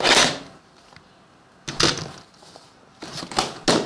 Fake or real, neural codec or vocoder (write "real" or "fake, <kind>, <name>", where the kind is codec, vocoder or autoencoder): real